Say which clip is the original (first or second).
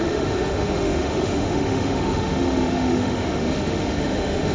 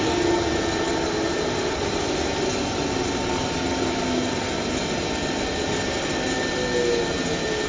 second